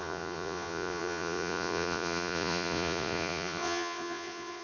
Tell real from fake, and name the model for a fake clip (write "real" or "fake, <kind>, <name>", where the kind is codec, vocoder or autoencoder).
fake, vocoder, Vocos